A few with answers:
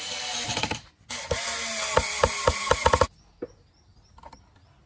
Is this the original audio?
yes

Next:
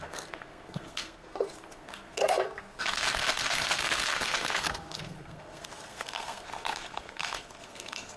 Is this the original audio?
no